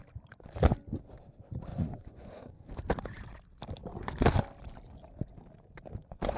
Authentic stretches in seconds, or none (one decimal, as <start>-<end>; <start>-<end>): 0.0-1.7; 2.6-6.4